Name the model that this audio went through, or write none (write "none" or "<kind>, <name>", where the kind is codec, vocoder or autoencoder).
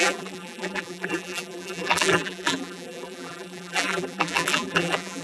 vocoder, BigVGAN v2